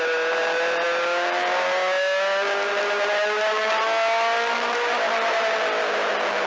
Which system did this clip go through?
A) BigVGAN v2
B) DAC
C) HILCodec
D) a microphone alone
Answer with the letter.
D